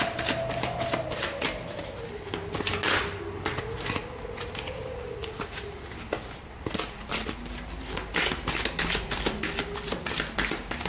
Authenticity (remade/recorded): recorded